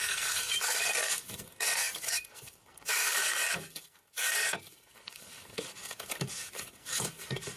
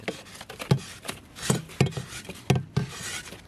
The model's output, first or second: first